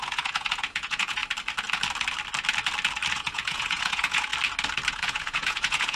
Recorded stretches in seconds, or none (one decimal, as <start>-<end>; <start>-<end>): 1.2-3.1; 4.3-4.9